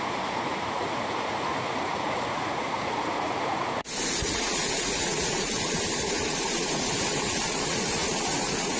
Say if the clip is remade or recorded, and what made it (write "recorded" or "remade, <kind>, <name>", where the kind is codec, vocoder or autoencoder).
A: remade, vocoder, Vocos